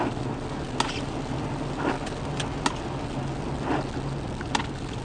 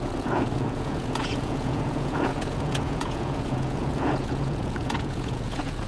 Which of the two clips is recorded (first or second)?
first